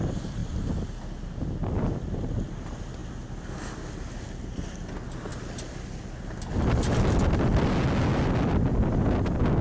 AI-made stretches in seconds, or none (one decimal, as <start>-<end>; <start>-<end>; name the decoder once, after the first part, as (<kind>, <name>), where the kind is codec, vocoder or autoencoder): none